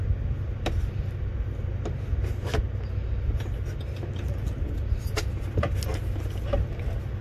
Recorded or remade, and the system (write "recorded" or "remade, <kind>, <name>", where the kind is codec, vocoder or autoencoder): recorded